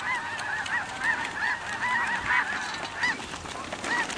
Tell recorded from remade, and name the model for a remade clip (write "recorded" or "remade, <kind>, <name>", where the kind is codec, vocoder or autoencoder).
recorded